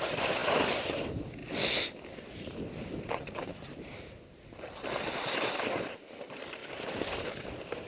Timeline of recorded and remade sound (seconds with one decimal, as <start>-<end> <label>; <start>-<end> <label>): 0.0-0.4 recorded; 0.4-0.9 remade; 0.9-6.6 recorded; 6.6-7.9 remade